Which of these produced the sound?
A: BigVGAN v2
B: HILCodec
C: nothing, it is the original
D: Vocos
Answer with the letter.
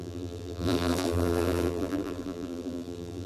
A